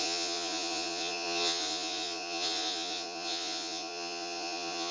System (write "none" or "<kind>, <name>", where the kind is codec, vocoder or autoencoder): vocoder, Vocos